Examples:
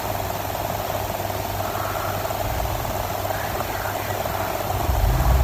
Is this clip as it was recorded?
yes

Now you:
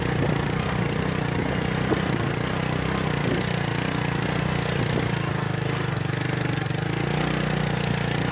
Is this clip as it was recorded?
yes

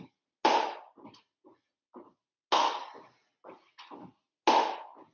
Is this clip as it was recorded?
yes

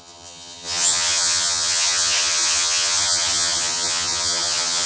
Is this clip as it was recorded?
no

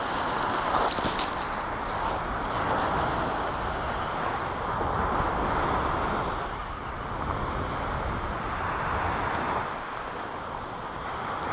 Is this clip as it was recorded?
yes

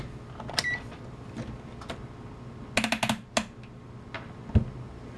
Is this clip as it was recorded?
yes